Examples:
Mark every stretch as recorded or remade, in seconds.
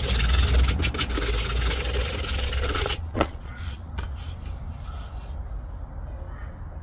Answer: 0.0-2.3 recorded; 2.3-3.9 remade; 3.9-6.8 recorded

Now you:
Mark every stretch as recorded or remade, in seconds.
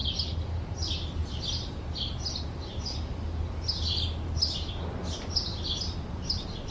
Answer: 0.0-6.7 recorded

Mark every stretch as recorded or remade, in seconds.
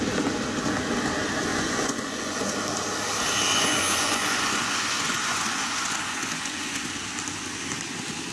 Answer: 0.0-1.5 recorded; 1.5-2.5 remade; 2.5-3.5 recorded; 3.5-6.9 remade; 6.9-8.3 recorded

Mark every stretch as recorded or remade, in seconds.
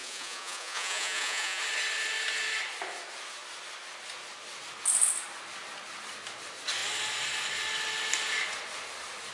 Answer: 0.0-1.6 remade; 1.6-9.3 recorded